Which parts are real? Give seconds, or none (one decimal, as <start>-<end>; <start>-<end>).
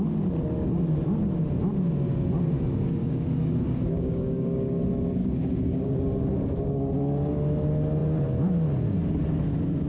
0.0-3.0; 4.8-5.2; 6.0-9.9